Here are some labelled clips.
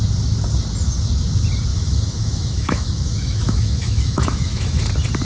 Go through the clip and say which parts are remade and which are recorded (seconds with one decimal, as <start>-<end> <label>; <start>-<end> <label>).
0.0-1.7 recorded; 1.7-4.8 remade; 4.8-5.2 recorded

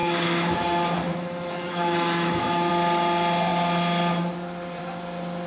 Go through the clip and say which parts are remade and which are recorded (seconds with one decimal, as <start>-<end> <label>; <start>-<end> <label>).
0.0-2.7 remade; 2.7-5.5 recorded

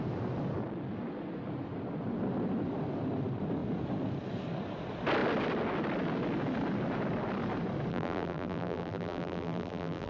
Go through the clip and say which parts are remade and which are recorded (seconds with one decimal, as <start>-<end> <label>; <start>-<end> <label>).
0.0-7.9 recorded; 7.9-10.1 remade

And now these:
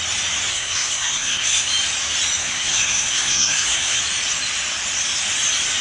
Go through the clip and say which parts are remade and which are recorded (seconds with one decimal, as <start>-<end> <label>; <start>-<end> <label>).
0.0-0.5 recorded; 0.5-1.7 remade; 1.7-2.4 recorded; 2.4-4.0 remade; 4.0-5.8 recorded

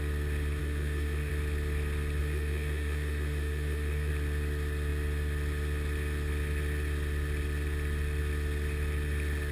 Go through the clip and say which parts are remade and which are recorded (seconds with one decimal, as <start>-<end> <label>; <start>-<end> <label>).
0.0-0.6 recorded; 0.6-1.3 remade; 1.3-2.2 recorded; 2.2-4.1 remade; 4.1-9.5 recorded